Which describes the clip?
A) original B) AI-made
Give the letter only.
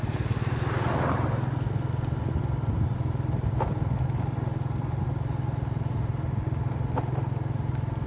A